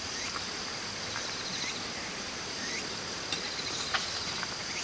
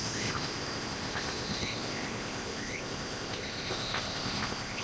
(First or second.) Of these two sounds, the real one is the first